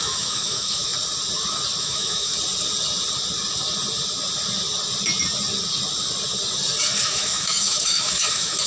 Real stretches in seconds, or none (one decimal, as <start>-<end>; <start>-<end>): 0.9-1.8; 2.3-7.0